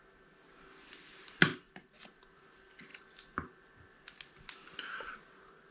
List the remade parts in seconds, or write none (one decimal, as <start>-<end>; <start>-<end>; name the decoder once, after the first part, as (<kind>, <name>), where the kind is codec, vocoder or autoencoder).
none